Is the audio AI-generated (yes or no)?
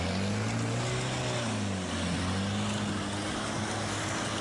no